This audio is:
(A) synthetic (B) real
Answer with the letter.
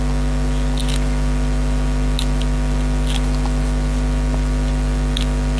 B